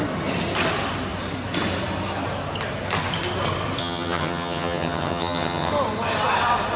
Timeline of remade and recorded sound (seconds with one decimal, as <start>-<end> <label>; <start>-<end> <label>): 0.0-3.8 recorded; 3.8-5.7 remade; 5.7-6.8 recorded